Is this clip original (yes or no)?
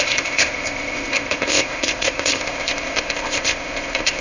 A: no